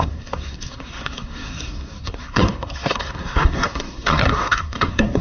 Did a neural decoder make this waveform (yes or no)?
yes